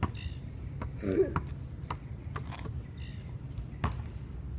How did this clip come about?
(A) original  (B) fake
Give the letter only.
A